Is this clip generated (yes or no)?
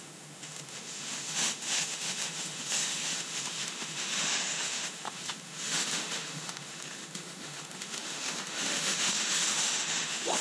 yes